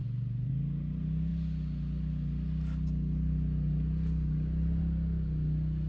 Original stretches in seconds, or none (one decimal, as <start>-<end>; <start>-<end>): 0.5-5.9